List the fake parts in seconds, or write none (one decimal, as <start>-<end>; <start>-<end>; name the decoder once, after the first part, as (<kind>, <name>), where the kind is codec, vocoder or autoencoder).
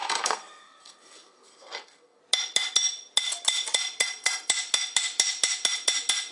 0.0-2.2 (codec, SNAC)